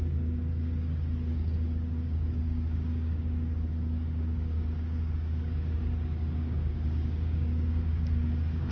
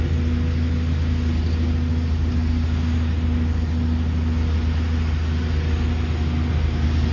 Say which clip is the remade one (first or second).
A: first